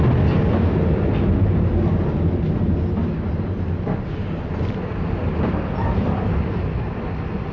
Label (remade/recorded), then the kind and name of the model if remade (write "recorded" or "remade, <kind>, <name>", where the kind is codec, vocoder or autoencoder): recorded